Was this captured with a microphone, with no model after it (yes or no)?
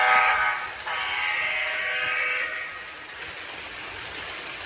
yes